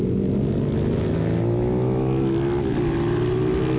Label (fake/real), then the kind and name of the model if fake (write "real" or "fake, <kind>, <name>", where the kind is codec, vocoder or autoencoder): real